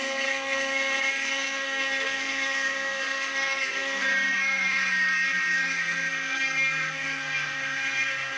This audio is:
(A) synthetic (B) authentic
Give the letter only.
A